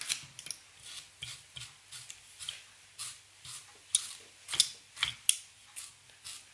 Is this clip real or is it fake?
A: real